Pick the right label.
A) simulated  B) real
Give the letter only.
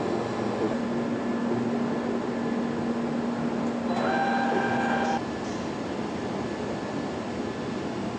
B